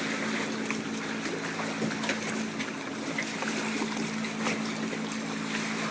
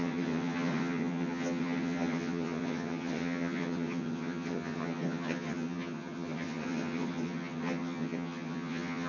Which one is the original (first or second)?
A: first